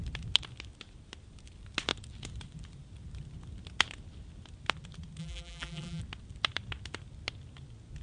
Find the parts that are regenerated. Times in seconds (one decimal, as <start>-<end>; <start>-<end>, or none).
5.2-6.0